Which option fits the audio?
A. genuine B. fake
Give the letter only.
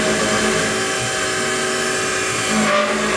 A